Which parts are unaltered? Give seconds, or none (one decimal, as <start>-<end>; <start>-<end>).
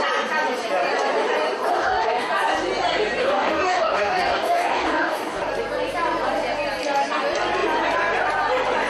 0.0-1.7; 2.3-3.2; 5.4-8.9